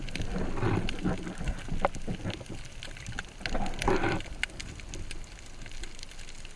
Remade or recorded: recorded